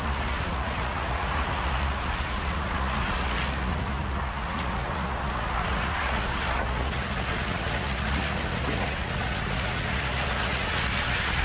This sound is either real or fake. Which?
fake